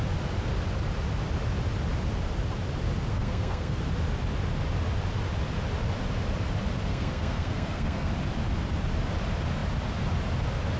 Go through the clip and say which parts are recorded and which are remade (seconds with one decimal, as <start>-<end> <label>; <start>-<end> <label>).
0.0-3.1 recorded; 3.1-3.8 remade; 3.8-6.9 recorded; 6.9-8.1 remade; 8.1-10.8 recorded